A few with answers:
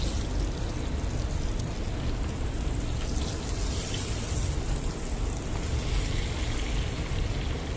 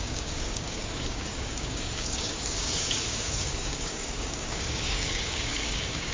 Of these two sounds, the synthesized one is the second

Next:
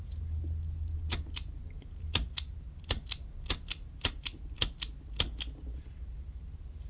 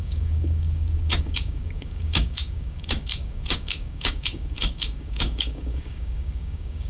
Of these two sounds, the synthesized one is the second